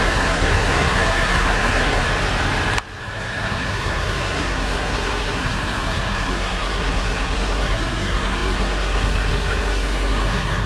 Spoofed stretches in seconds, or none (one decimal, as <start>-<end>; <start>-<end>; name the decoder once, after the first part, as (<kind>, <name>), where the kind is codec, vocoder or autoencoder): 0.0-2.0 (codec, SNAC); 3.0-10.7